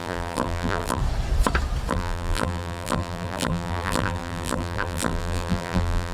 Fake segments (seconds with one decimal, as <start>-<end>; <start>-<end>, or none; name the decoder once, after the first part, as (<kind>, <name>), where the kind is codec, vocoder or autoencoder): 0.0-1.0 (vocoder, BigVGAN v2); 1.9-6.1